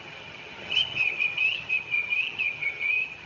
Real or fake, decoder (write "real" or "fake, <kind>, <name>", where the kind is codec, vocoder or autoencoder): fake, vocoder, HiFi-GAN